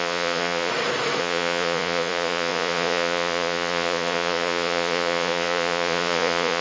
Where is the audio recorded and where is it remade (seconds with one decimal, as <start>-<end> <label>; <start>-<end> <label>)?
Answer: 0.0-0.7 remade; 0.7-1.2 recorded; 1.2-6.6 remade